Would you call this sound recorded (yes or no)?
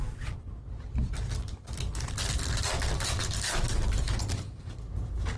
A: yes